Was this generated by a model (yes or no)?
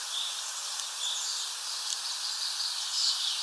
no